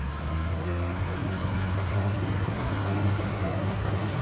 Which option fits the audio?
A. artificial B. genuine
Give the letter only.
A